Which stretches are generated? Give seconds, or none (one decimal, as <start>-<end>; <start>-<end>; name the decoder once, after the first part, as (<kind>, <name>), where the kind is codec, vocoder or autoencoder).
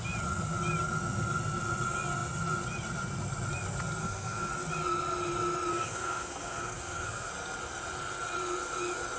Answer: 4.0-4.5 (codec, SNAC); 5.7-7.3